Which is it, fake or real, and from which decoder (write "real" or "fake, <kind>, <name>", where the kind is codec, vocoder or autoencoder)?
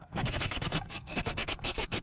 fake, codec, SNAC